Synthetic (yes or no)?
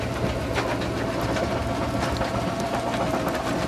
no